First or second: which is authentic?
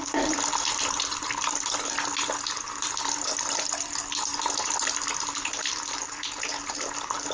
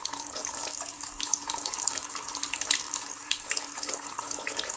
first